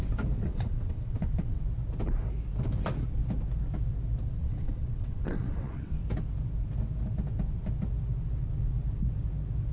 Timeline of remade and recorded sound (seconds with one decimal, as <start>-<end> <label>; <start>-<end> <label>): 0.0-0.4 recorded; 0.4-1.6 remade; 1.6-4.4 recorded; 4.4-6.0 remade; 6.0-9.7 recorded